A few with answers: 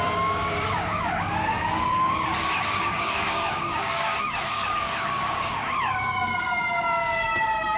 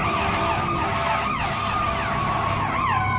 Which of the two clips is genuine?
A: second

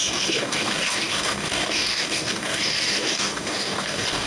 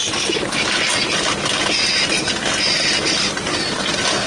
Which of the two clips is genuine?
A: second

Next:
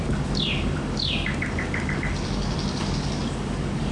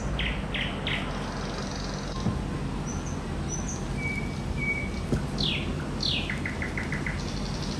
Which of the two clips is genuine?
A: second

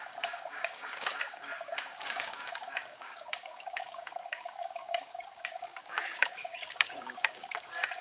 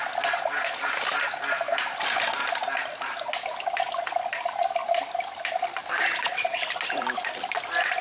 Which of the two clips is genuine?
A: second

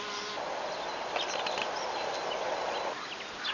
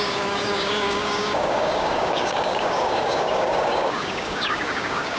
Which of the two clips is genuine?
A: first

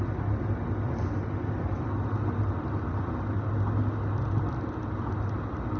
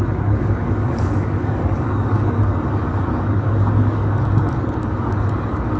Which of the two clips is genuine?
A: first